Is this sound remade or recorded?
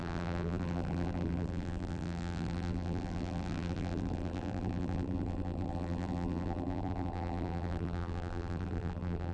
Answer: remade